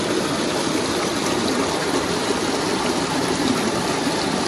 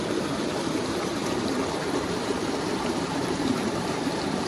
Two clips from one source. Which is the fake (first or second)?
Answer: second